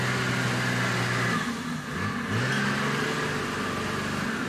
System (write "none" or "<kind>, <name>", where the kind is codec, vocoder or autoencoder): none